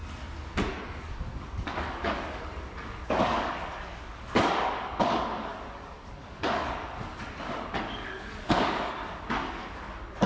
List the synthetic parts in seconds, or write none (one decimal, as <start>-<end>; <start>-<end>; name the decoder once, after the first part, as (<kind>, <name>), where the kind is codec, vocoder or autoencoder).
0.6-10.3 (codec, DAC)